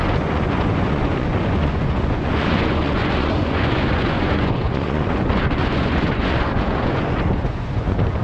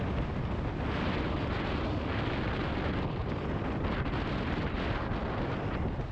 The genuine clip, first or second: second